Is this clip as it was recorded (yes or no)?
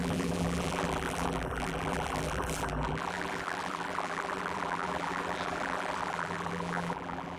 no